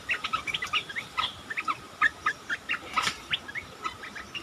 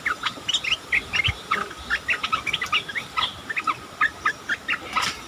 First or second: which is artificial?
first